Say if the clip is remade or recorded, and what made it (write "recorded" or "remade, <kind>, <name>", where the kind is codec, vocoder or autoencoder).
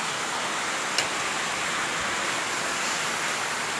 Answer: recorded